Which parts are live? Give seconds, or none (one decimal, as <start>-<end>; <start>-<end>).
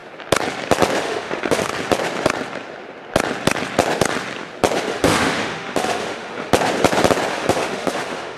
0.0-1.0; 1.7-4.9; 6.5-7.3